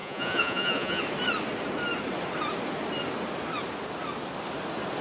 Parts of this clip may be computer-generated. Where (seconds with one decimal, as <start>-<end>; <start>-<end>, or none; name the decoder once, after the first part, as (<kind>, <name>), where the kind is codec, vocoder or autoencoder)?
0.0-1.0 (vocoder, Vocos)